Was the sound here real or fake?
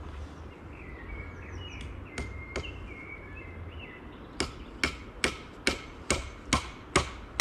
real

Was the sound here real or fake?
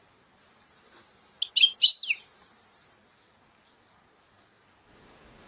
real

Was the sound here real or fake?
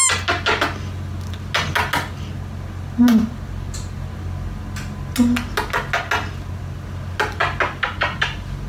real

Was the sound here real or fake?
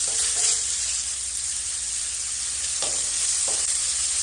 real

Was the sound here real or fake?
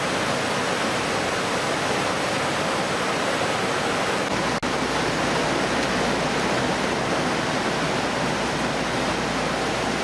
real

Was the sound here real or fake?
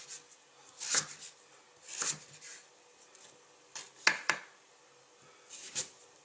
real